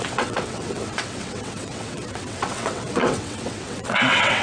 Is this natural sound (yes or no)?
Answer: no